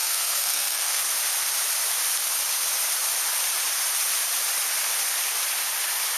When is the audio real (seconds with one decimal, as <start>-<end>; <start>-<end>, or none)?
1.0-6.2